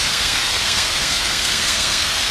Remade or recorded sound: remade